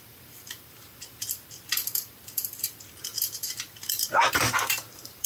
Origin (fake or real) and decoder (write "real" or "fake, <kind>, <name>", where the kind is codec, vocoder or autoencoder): fake, vocoder, BigVGAN v2